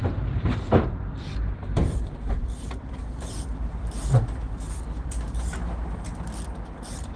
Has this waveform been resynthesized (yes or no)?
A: yes